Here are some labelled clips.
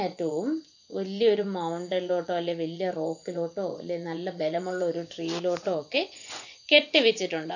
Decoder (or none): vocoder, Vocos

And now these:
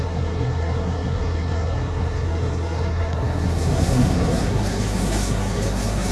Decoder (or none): codec, SNAC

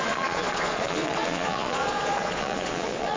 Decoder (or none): vocoder, Vocos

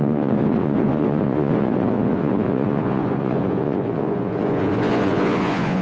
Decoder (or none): vocoder, Vocos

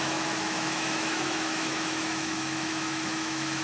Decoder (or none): autoencoder, DAC-VAE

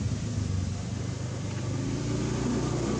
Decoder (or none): none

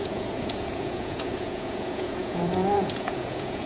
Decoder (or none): vocoder, Vocos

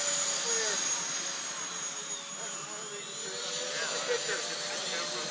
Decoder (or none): none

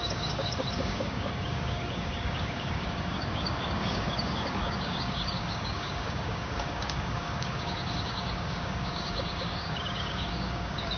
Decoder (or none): codec, DAC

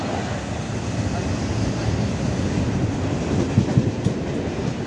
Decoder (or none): none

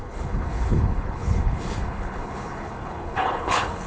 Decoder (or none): codec, HILCodec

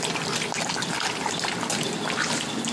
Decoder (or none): none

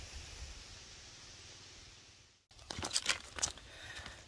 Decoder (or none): none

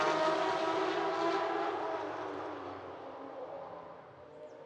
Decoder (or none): none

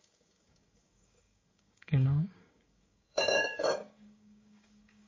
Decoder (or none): codec, DAC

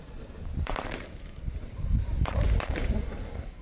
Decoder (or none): vocoder, BigVGAN v2